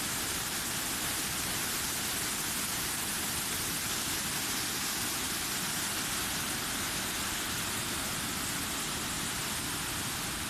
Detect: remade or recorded recorded